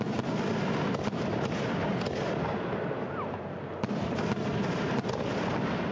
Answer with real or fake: real